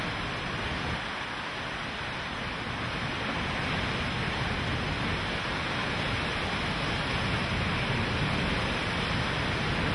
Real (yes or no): yes